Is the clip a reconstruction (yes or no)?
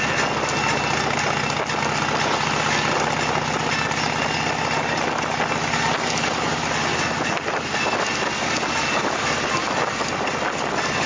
no